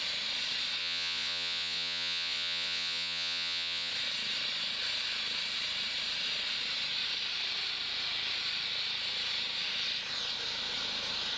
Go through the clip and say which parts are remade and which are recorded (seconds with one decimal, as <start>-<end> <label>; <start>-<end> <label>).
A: 0.0-0.8 recorded; 0.8-3.9 remade; 3.9-11.4 recorded